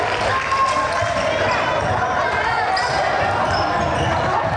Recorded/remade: recorded